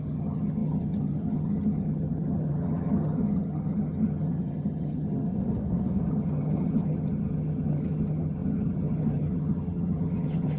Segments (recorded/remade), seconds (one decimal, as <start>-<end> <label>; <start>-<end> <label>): 0.0-5.3 remade; 5.3-6.1 recorded; 6.1-10.6 remade